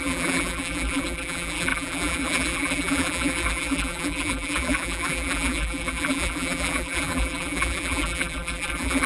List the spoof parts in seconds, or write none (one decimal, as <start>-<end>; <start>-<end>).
0.0-9.1